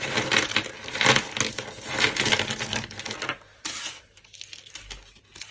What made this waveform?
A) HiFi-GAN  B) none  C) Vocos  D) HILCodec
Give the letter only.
B